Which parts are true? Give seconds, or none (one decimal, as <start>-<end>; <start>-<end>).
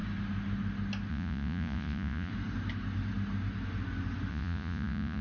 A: 0.0-1.1; 2.3-4.3